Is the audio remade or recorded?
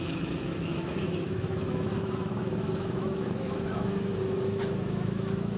remade